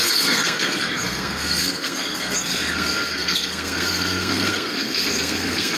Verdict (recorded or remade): remade